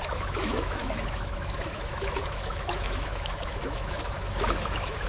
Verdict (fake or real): fake